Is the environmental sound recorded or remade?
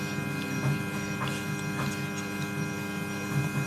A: recorded